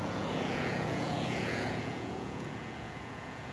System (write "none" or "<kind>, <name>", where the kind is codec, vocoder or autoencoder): vocoder, Vocos